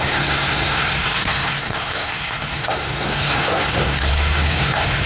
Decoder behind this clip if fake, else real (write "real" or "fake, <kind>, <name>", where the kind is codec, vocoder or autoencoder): fake, codec, SNAC